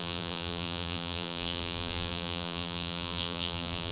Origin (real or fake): fake